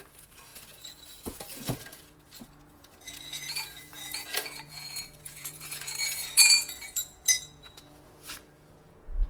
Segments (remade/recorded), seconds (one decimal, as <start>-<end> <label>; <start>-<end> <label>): 0.0-9.3 remade